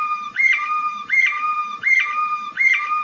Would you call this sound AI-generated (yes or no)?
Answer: no